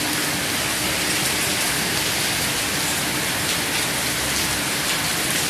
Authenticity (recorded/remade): recorded